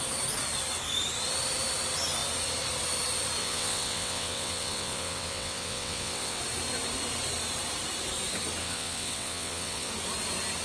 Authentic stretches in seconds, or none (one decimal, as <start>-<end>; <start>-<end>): 0.0-3.4; 6.4-8.6; 9.9-10.6